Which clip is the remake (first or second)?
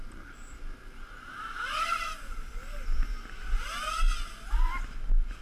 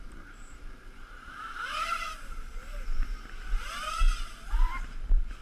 second